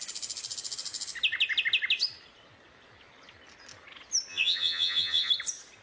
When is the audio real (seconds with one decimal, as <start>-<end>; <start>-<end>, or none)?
0.0-4.3; 5.3-5.8

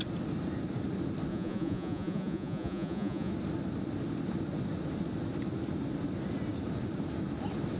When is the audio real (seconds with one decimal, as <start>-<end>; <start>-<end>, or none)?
0.0-1.3; 3.3-7.8

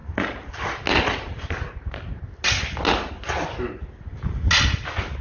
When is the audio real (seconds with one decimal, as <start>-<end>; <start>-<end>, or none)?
0.0-5.2

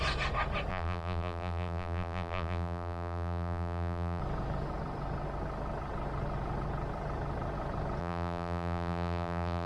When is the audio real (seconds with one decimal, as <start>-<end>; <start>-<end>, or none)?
0.0-0.7; 4.2-8.0

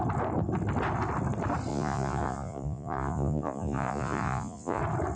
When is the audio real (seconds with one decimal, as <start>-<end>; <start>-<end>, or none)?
0.0-1.7; 4.8-5.2